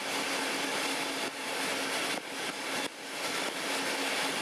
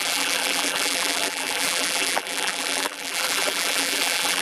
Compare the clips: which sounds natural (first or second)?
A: first